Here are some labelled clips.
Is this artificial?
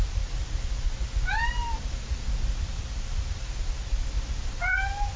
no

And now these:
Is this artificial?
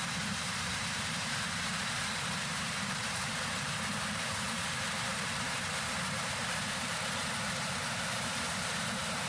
yes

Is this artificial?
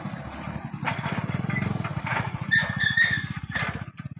no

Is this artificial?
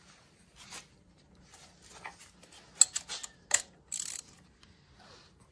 no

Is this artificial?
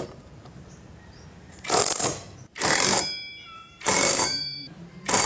yes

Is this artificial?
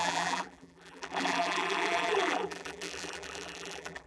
yes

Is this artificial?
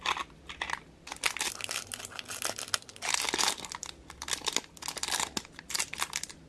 no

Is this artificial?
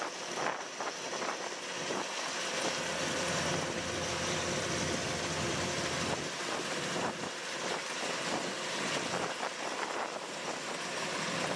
yes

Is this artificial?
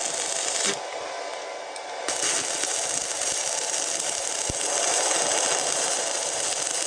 no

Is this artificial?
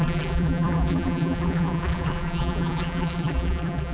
yes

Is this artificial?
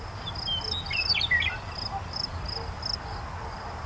no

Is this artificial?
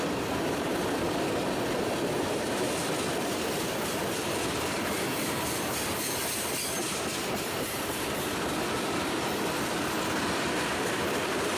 yes